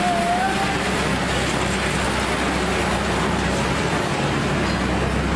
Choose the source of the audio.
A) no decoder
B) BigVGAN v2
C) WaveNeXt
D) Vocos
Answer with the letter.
A